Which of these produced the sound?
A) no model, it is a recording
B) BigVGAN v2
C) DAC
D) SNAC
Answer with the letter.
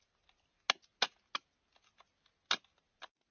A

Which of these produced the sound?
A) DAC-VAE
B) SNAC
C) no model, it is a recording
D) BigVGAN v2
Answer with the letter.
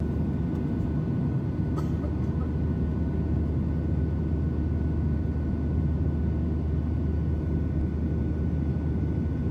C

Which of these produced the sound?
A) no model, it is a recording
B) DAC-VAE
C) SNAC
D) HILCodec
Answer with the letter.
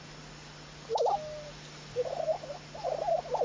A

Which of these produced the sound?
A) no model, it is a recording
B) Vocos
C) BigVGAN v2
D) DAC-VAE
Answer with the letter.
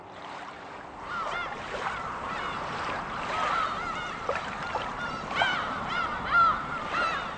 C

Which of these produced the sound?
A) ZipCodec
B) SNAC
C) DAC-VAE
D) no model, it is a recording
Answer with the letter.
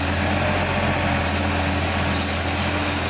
D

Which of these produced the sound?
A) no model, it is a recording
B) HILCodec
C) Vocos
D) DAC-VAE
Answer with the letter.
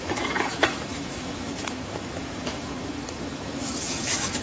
D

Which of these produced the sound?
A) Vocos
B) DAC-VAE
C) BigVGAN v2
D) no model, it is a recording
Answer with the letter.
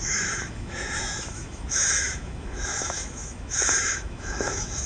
B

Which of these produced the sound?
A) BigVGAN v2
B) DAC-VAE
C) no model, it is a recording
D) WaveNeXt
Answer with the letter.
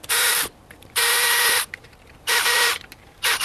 A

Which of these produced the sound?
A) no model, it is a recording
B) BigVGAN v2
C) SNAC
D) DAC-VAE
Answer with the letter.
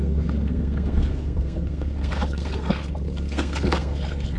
C